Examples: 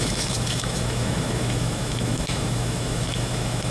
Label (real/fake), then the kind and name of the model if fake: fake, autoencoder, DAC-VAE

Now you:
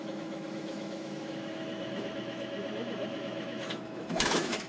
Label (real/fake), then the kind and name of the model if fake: fake, autoencoder, DAC-VAE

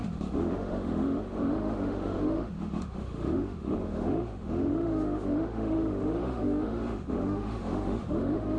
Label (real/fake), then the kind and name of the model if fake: fake, autoencoder, DAC-VAE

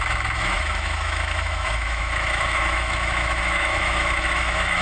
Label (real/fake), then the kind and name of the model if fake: fake, autoencoder, DAC-VAE